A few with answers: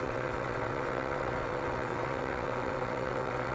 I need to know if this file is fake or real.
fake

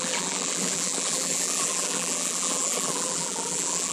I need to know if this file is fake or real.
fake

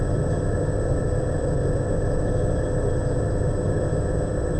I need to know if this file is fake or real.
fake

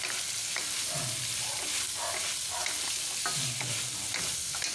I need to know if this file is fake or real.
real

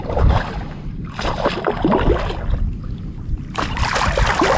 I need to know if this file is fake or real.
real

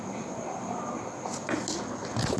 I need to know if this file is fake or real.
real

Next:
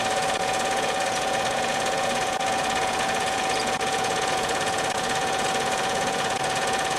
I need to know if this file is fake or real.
fake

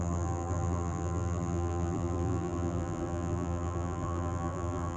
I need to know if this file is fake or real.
fake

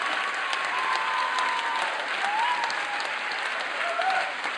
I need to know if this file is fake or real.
real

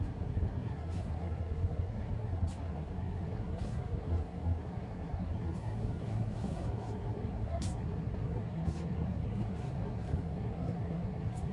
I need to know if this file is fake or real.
fake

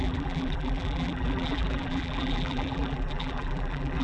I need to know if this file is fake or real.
fake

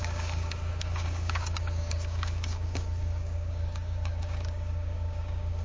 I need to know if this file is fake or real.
fake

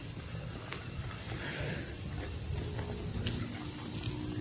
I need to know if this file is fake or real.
real